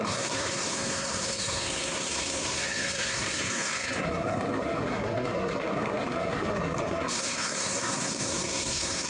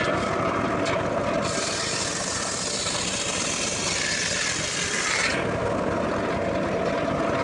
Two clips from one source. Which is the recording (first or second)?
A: second